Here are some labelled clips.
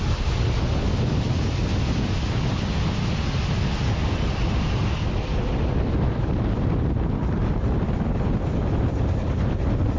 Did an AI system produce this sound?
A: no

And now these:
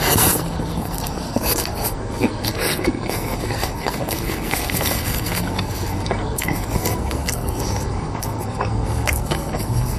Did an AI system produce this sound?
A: yes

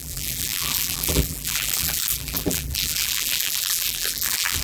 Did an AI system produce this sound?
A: yes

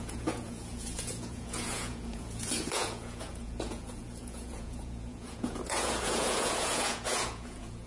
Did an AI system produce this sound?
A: yes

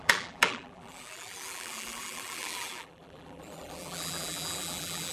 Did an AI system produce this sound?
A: yes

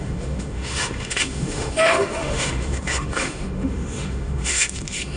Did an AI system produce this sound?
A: yes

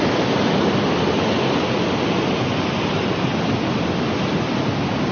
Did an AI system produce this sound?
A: no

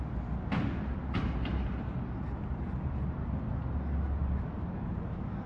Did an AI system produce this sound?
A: no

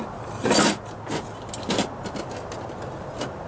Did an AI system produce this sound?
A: no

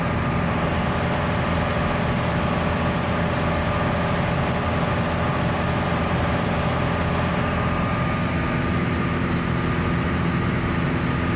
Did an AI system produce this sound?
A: no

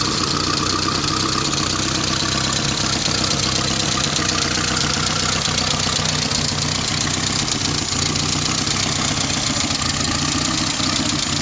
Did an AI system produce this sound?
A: no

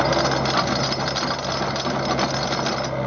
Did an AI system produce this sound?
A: no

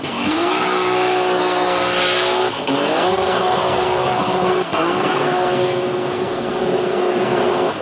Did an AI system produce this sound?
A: yes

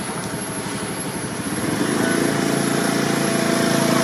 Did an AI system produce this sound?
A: no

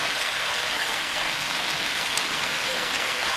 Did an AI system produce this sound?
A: yes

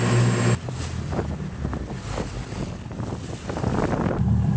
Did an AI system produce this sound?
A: no